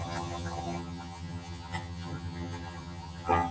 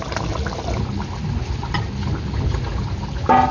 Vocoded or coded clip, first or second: first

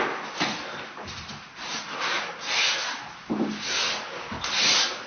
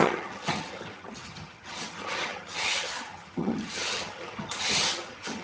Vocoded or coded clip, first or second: second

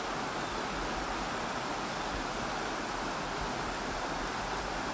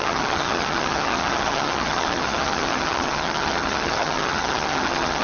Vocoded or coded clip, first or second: second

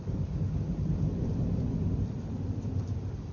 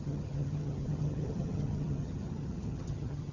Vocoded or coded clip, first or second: second